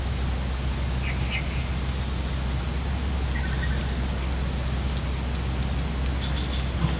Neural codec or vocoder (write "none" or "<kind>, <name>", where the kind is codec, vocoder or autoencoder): none